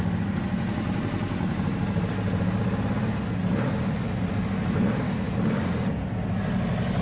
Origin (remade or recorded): recorded